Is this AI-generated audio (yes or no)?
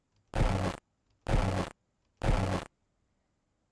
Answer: no